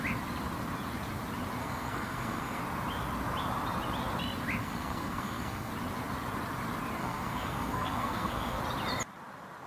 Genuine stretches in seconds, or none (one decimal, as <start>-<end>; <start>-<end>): 0.0-1.6; 2.6-4.6; 5.7-7.0; 8.6-9.7

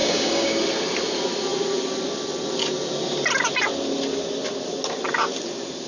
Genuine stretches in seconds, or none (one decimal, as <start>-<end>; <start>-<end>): 0.6-5.9